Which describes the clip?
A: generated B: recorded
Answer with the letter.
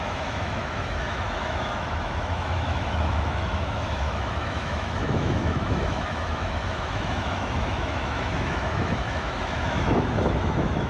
A